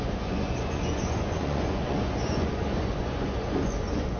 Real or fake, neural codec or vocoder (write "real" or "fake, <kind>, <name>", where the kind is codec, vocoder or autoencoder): fake, vocoder, Vocos